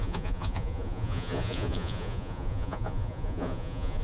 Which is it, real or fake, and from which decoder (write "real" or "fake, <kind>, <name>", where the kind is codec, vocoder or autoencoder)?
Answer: fake, vocoder, Vocos